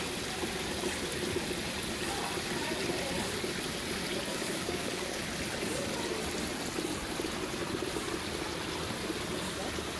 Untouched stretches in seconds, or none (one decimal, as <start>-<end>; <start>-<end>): 0.0-4.3; 5.2-10.0